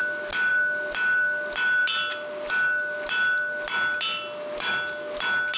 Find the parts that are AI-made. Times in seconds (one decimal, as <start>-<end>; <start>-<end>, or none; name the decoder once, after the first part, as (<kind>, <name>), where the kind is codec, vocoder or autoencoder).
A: none